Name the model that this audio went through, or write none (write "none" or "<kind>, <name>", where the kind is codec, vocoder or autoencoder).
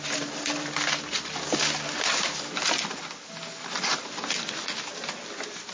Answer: none